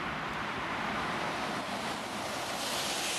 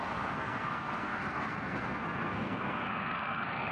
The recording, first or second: first